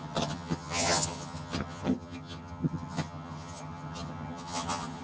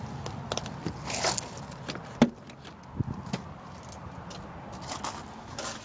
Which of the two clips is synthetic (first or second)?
first